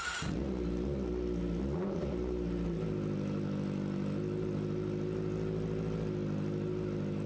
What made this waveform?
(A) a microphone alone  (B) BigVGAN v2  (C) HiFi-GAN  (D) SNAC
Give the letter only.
A